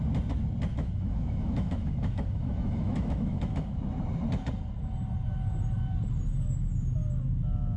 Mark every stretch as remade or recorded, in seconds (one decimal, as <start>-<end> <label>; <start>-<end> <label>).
0.0-0.7 recorded; 0.7-3.8 remade; 3.8-7.8 recorded